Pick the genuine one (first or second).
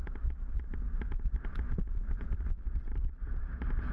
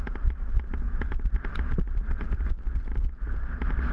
second